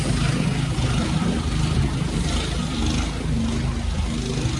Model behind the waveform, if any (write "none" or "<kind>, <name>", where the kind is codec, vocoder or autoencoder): none